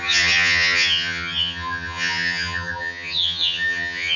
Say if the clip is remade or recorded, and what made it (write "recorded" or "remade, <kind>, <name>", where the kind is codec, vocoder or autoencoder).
remade, vocoder, HiFi-GAN